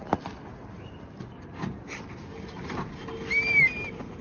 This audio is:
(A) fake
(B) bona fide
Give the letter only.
B